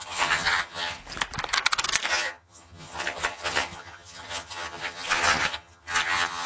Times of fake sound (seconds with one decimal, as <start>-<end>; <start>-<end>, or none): 0.0-1.0; 2.1-6.5